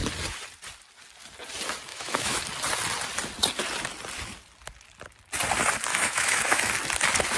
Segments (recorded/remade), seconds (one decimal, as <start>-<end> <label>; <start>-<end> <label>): 0.0-1.9 recorded; 1.9-2.4 remade; 2.4-5.9 recorded; 5.9-6.7 remade; 6.7-7.4 recorded